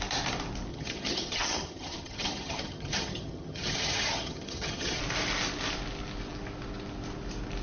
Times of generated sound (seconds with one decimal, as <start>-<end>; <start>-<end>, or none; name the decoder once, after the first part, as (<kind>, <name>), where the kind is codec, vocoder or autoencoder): 0.7-5.0 (vocoder, HiFi-GAN)